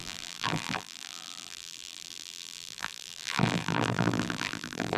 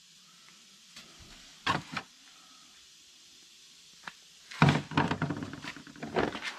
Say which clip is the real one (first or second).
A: second